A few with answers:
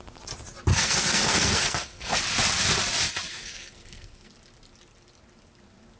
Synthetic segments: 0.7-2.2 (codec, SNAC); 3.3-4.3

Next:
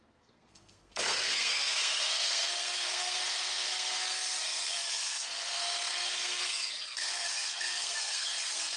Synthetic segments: 0.0-8.8 (codec, SNAC)

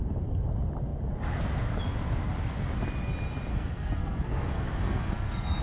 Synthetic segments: 3.5-5.6 (codec, SNAC)

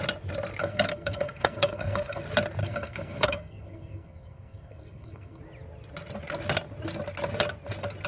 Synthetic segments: 0.6-2.2 (codec, SNAC); 2.6-5.4

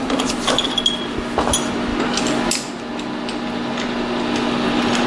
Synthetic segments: none